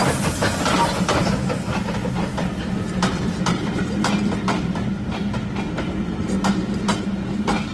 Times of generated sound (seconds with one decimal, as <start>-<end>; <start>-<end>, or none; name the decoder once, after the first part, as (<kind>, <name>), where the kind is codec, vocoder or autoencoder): none